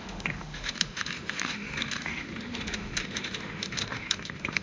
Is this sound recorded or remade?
remade